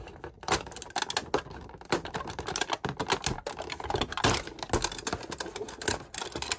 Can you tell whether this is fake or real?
real